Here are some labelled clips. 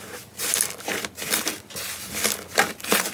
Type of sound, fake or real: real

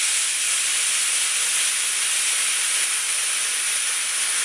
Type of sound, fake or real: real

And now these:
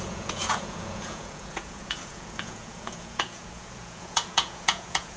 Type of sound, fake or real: fake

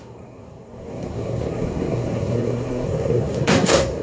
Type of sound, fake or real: fake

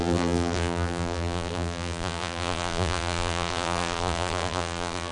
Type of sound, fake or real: fake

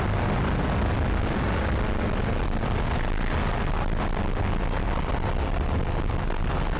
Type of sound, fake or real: real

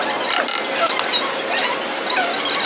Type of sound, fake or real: real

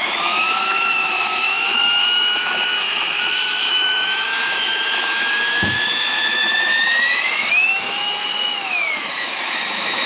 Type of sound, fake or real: fake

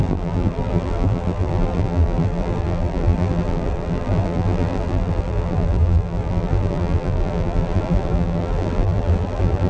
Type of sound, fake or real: fake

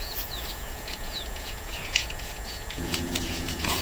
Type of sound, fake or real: fake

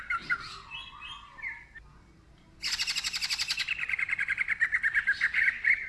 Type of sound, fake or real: real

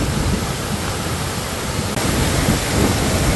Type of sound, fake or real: real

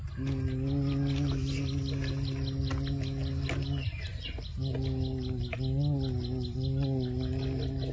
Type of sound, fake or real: real